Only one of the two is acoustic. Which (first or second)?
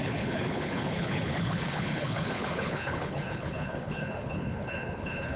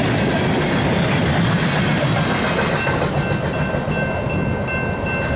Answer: second